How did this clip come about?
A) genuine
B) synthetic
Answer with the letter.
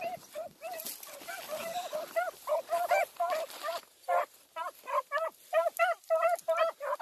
A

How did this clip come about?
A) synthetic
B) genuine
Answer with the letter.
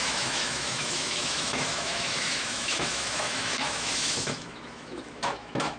A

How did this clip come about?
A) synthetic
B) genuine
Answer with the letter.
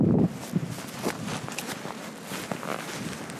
B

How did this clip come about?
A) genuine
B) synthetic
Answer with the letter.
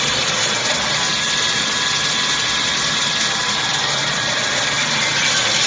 B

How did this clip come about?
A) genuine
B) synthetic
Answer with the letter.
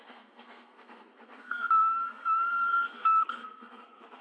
B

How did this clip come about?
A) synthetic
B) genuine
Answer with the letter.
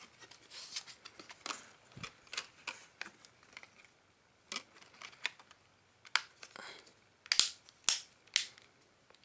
B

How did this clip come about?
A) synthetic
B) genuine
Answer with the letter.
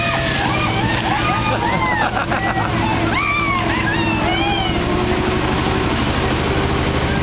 B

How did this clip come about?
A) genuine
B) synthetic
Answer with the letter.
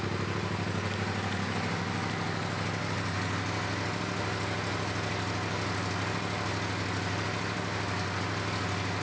A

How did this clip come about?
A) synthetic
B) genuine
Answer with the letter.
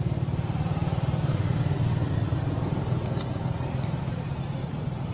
B